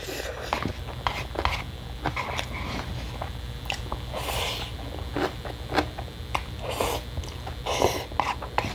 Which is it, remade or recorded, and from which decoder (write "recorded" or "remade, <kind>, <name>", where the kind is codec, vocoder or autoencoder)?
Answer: recorded